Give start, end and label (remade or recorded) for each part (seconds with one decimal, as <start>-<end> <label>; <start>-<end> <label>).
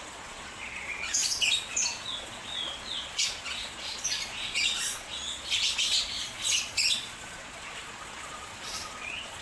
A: 0.0-9.4 remade